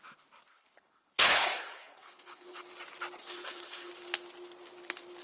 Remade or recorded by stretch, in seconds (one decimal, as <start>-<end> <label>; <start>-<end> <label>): 0.0-0.5 recorded; 0.5-2.6 remade; 2.6-3.2 recorded; 3.2-3.9 remade; 3.9-5.2 recorded